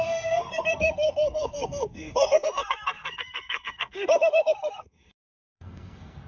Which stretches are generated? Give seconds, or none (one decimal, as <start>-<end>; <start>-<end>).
0.0-6.3